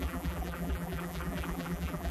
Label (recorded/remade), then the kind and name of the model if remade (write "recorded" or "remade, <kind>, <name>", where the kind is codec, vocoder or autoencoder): remade, vocoder, BigVGAN v2